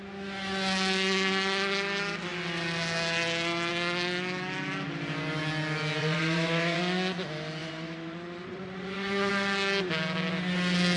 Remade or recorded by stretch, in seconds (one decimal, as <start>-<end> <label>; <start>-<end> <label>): 0.0-6.0 recorded; 6.0-6.8 remade; 6.8-7.6 recorded; 7.6-9.3 remade; 9.3-11.0 recorded